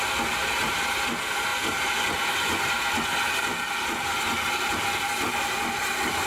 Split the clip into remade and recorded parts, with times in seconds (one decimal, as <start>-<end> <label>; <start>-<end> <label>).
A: 0.0-6.3 recorded